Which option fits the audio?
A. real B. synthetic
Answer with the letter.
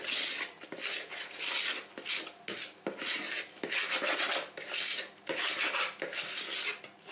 A